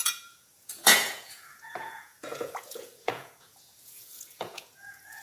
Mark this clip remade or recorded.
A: remade